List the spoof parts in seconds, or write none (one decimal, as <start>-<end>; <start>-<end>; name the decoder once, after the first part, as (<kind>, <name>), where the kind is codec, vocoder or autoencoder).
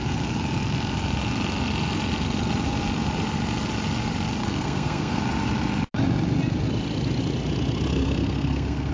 4.4-5.2 (codec, SNAC); 7.9-8.9